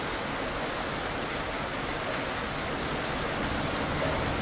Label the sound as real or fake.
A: real